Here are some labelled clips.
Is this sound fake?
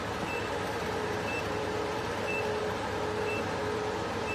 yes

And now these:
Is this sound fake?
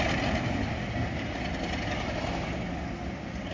no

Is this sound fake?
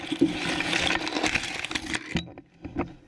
no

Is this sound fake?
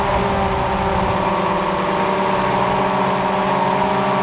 no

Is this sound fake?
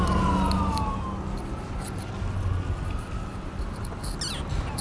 no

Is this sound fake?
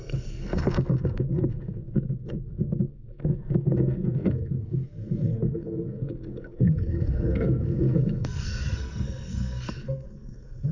yes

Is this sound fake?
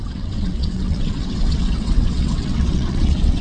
yes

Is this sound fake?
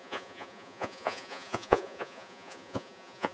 yes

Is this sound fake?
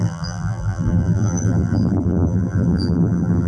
yes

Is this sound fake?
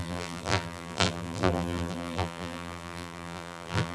yes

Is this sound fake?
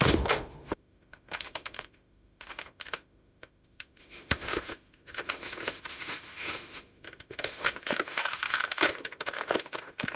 yes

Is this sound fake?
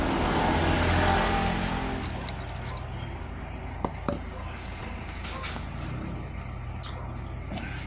no